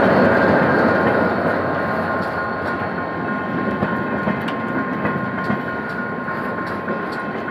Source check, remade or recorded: recorded